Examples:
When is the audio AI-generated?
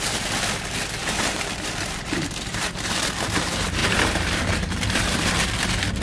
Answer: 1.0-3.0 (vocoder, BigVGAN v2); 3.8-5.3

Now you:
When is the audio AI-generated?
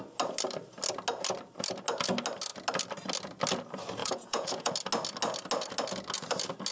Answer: 4.0-4.7 (vocoder, Vocos)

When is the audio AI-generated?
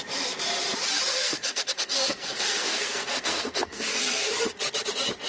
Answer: 1.1-4.3 (codec, SNAC)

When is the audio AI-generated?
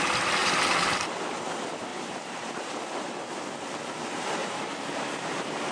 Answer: 0.4-1.1 (vocoder, BigVGAN v2); 1.9-2.8; 4.4-5.7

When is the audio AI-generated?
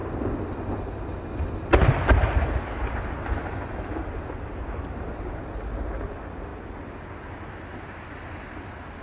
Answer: none